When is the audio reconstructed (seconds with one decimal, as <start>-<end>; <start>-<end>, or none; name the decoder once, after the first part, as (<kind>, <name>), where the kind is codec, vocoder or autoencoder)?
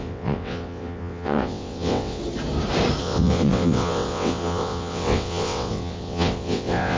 0.0-2.2 (vocoder, WaveNeXt); 3.0-7.0